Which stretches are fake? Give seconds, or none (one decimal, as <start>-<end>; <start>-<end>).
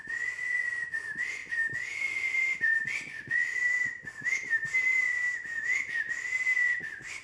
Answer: 0.0-1.4; 2.6-3.6; 6.8-7.2